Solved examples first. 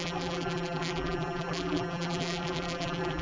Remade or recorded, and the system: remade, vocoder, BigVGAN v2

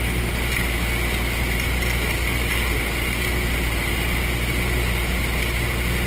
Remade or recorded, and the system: recorded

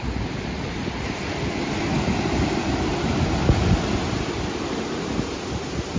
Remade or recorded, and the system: recorded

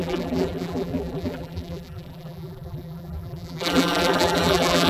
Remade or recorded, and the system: remade, vocoder, BigVGAN v2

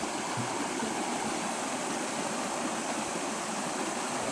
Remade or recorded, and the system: recorded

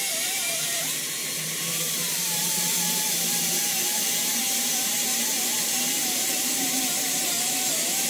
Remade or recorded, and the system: remade, vocoder, BigVGAN v2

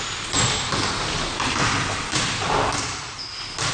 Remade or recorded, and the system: recorded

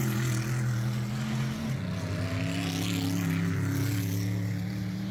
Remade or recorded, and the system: recorded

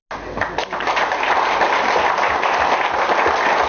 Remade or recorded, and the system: recorded